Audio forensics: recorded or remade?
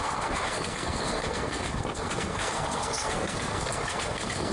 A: remade